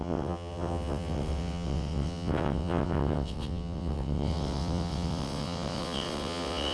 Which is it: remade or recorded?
remade